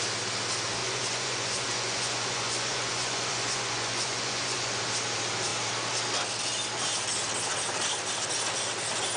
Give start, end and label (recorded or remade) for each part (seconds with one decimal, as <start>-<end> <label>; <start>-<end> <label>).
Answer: 0.0-0.8 recorded; 0.8-4.8 remade; 4.8-9.2 recorded